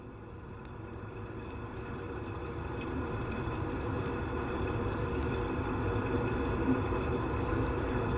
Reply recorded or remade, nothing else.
recorded